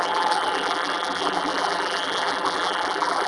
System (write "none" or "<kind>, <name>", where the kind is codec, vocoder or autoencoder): vocoder, BigVGAN v2